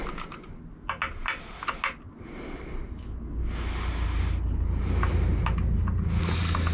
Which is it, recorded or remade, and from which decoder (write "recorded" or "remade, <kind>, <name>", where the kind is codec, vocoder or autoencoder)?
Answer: recorded